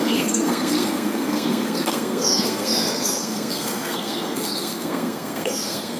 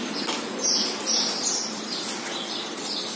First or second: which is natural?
second